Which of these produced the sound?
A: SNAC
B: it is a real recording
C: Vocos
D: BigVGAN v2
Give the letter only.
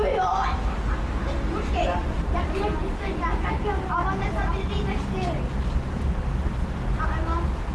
B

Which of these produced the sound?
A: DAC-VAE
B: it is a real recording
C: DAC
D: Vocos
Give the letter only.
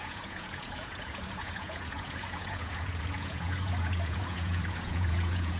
D